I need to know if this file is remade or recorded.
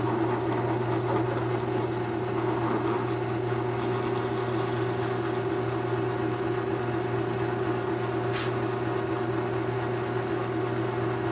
recorded